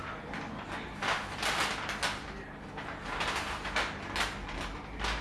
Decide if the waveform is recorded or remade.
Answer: recorded